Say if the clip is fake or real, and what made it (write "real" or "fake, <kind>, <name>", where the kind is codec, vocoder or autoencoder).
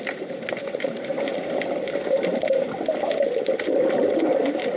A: real